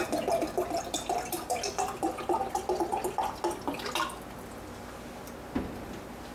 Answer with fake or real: real